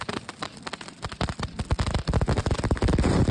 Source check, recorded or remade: recorded